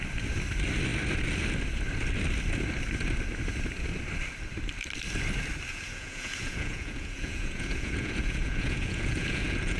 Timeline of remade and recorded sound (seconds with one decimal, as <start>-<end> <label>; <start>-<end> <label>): 0.0-5.7 recorded; 5.7-9.8 remade